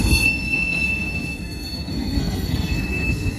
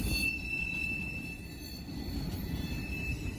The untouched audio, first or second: second